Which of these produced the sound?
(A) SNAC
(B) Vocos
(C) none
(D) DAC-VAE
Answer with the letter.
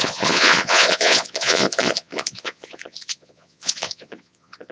B